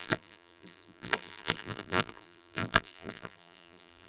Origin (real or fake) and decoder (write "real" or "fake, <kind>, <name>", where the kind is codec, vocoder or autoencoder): fake, vocoder, BigVGAN v2